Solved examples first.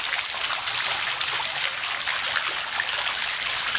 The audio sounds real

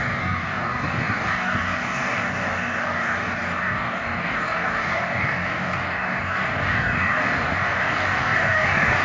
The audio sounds fake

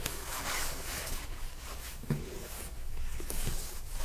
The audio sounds fake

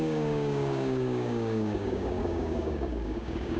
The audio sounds fake